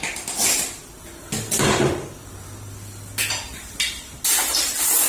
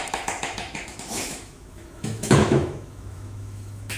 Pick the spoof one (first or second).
second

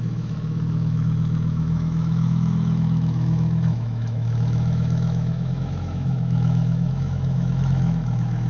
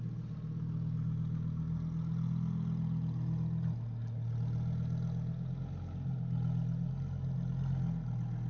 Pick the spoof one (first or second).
first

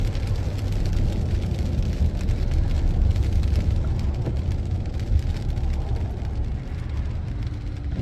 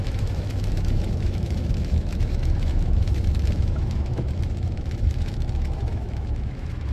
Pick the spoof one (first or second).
second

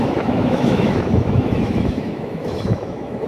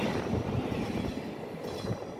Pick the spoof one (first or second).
first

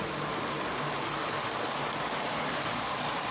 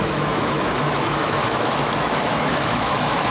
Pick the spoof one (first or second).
second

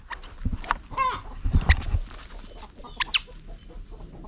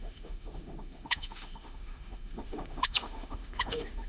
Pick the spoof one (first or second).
second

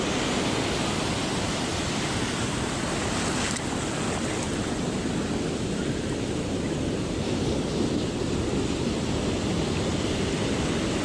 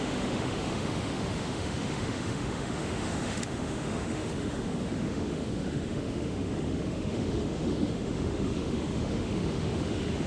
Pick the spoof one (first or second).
second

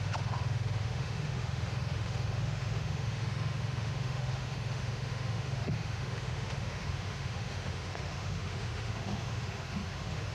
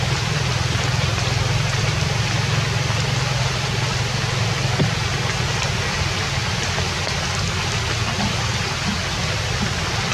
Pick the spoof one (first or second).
first